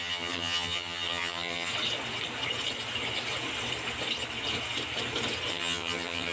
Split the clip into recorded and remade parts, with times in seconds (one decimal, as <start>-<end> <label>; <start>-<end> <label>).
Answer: 0.0-1.7 remade; 1.7-5.5 recorded; 5.5-6.3 remade